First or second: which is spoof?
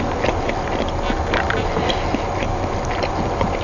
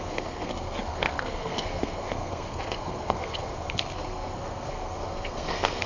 second